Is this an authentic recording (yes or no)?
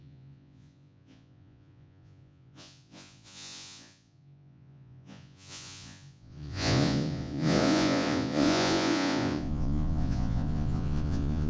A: no